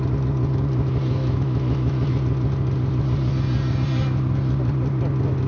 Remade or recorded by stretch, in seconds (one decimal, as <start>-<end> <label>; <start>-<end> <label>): 0.0-1.2 recorded; 1.2-2.1 remade; 2.1-5.5 recorded